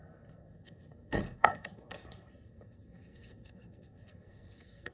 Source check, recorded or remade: remade